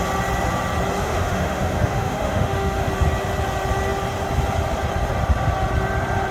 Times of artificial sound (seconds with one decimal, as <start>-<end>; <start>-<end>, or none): 1.0-2.9